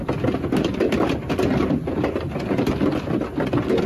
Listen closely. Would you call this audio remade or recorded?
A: remade